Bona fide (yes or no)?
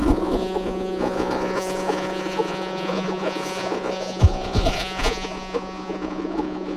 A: no